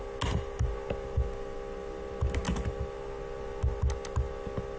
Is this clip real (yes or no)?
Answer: yes